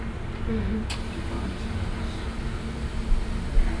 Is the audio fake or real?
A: real